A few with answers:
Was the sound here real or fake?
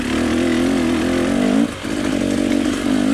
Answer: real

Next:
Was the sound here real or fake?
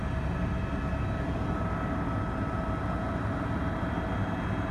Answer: real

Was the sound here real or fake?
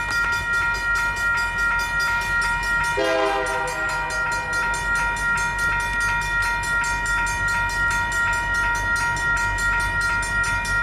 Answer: real